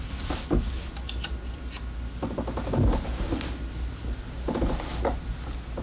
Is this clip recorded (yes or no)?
yes